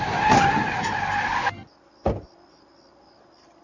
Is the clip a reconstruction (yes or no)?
no